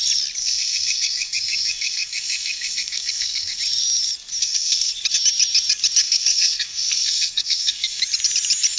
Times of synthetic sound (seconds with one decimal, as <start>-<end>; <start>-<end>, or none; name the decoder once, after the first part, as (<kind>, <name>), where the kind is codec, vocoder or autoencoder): 0.4-3.6 (codec, SNAC); 4.4-4.9; 6.0-8.0